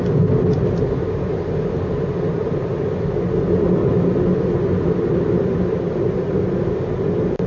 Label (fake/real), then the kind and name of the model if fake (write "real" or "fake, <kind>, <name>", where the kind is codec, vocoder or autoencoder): real